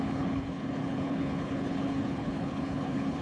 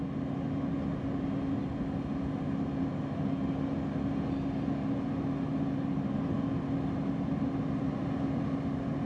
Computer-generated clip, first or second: first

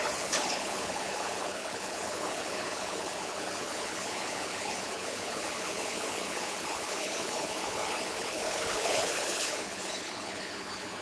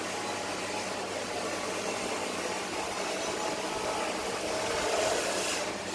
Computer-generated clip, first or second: first